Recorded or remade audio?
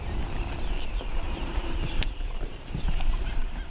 remade